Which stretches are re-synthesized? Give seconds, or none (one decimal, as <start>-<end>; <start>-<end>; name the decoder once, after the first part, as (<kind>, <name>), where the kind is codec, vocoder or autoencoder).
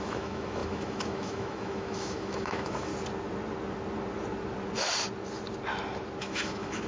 0.0-2.9 (autoencoder, DAC-VAE); 6.2-6.9